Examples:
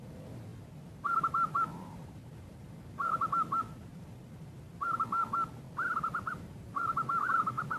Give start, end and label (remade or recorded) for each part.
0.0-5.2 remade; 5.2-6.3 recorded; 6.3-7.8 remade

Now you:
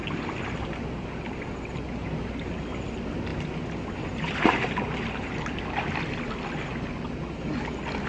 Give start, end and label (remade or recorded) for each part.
0.0-8.1 recorded

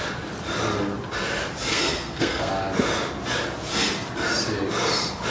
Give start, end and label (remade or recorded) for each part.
0.0-1.7 recorded; 1.7-2.5 remade; 2.5-5.3 recorded